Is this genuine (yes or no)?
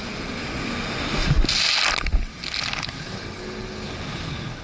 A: yes